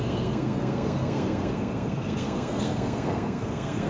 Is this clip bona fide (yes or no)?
no